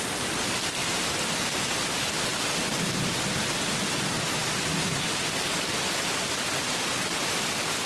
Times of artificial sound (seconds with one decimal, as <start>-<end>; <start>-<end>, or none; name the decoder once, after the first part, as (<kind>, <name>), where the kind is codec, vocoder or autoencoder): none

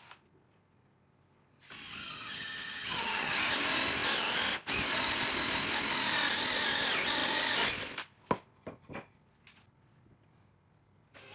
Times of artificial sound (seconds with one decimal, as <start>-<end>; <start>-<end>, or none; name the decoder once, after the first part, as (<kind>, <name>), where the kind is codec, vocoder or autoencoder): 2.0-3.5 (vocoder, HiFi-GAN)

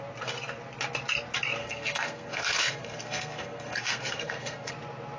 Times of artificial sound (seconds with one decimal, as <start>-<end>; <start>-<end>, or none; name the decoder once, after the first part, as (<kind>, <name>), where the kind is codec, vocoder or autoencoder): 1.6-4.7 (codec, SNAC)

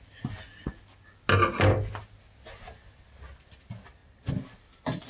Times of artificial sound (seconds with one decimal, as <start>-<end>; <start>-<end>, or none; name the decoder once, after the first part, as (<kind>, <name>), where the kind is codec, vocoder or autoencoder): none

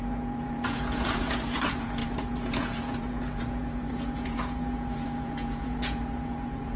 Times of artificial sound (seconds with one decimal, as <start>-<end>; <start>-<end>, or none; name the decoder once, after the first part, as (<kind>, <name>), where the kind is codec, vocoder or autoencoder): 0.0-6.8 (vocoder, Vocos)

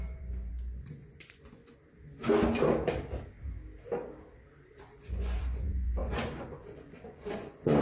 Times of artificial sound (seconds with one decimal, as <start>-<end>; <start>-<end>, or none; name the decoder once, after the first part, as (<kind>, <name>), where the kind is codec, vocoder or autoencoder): 0.0-1.6 (vocoder, Vocos); 4.8-7.8

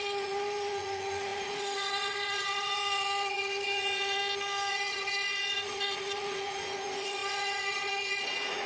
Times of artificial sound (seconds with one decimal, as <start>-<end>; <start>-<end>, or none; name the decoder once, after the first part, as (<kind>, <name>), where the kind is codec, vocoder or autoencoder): 0.0-4.2 (vocoder, Vocos); 4.7-8.7

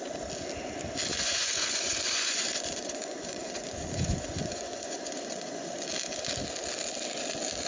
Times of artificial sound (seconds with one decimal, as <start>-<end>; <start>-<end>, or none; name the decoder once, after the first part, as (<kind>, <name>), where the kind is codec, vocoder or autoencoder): 1.1-5.7 (vocoder, Vocos)